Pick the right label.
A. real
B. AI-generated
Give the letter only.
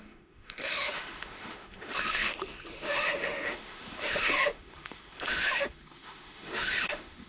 B